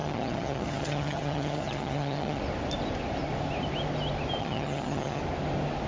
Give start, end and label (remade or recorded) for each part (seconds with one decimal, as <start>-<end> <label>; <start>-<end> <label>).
0.0-2.4 remade; 2.4-4.4 recorded; 4.4-5.2 remade; 5.2-5.9 recorded